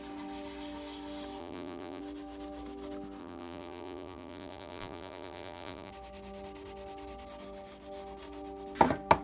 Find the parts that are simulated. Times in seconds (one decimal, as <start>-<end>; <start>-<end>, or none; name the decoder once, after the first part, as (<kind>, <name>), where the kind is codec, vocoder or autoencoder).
1.4-2.0 (vocoder, BigVGAN v2); 3.2-5.9